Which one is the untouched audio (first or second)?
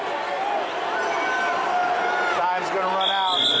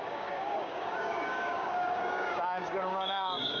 first